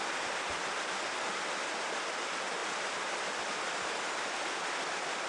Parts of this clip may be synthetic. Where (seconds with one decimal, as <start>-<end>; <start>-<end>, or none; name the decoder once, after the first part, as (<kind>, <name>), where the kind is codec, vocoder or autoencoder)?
none